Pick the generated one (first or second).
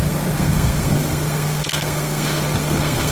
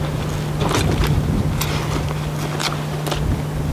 first